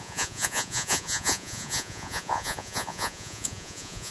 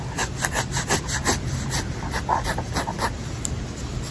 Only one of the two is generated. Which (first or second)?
first